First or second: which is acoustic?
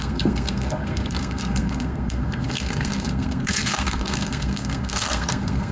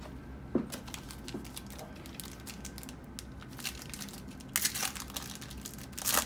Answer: second